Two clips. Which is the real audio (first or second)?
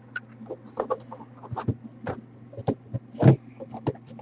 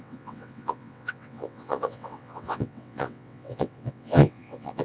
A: first